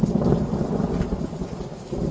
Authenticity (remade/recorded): recorded